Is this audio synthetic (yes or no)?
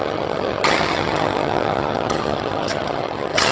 yes